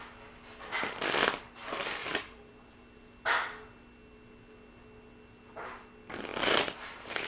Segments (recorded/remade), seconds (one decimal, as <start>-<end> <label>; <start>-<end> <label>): 0.0-2.0 recorded; 2.0-2.8 remade; 2.8-6.3 recorded; 6.3-7.3 remade